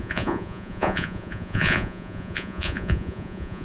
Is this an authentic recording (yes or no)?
no